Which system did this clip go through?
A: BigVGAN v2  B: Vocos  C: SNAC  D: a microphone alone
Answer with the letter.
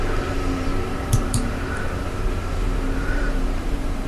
A